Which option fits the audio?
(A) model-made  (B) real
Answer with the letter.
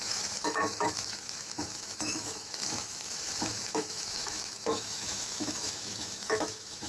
A